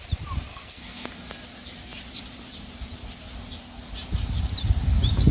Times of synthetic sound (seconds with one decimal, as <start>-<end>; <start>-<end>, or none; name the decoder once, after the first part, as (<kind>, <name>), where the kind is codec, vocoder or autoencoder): 0.5-1.1 (codec, SNAC)